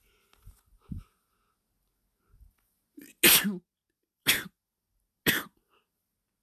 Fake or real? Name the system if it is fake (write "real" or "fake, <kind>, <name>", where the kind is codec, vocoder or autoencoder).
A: real